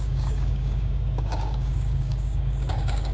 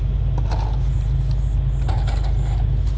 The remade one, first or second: first